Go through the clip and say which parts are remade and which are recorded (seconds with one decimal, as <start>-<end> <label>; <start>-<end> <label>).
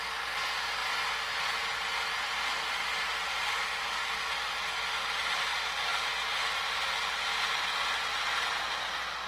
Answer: 0.0-9.3 recorded